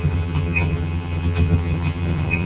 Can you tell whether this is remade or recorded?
remade